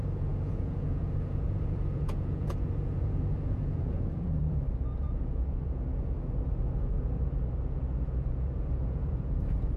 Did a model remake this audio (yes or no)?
yes